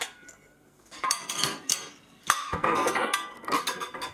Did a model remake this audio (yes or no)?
yes